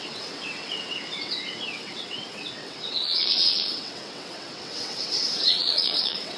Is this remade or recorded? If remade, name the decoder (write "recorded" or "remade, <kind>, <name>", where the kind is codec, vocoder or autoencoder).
remade, vocoder, WaveNeXt